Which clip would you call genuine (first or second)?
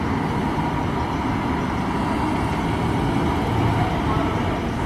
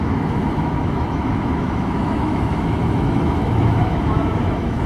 first